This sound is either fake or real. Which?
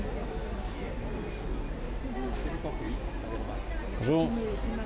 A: real